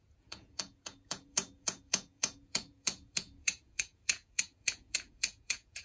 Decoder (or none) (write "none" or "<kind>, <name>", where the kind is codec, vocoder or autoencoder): vocoder, Vocos